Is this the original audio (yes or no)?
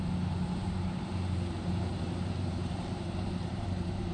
no